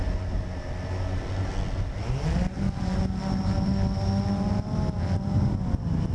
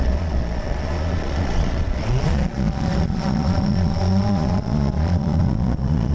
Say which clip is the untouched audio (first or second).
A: first